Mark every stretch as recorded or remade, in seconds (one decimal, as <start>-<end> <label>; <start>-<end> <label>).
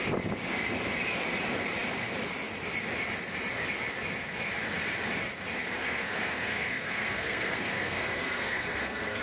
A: 0.0-5.8 recorded; 5.8-9.2 remade